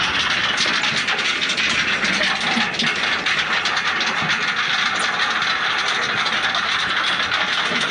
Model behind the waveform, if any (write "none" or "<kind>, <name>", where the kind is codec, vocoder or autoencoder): none